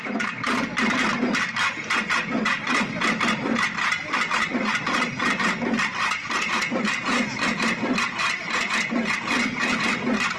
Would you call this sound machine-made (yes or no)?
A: no